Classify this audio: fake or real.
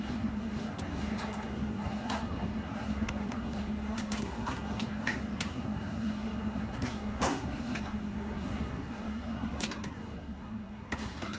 fake